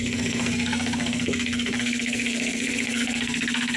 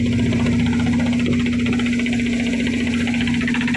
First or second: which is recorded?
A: second